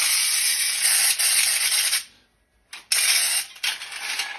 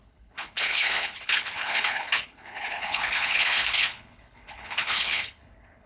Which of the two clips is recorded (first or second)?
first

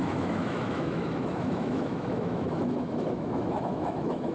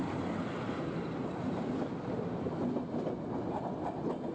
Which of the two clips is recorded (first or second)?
second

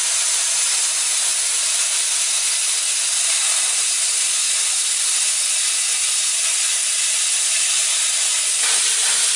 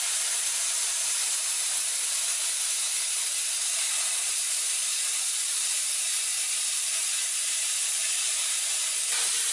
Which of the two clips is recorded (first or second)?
first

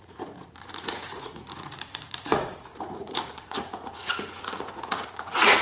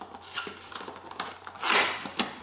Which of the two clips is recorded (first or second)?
second